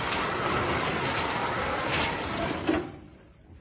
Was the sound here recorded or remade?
remade